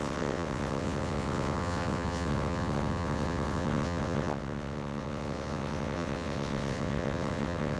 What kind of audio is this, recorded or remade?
remade